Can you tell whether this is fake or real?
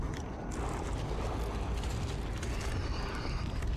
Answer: real